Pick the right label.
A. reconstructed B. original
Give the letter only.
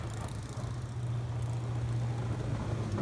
B